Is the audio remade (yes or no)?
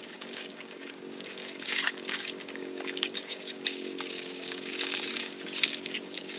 yes